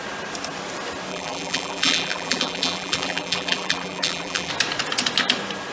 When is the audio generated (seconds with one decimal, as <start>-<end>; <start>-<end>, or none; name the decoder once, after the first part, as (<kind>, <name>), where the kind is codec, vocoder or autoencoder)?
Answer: 1.1-4.5 (vocoder, BigVGAN v2)